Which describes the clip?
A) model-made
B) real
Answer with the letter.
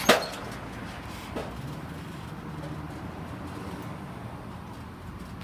B